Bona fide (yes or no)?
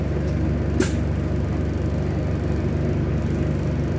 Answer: yes